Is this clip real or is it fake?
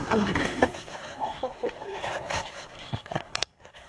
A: fake